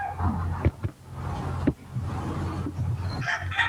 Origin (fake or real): real